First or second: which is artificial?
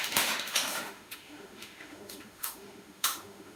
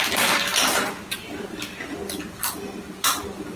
first